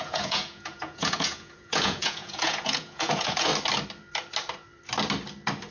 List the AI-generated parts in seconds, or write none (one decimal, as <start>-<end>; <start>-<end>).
0.0-3.5